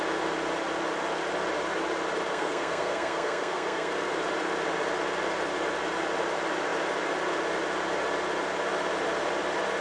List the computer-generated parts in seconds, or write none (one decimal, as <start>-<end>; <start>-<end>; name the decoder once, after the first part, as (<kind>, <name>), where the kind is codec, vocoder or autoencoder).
2.3-4.1 (codec, SNAC)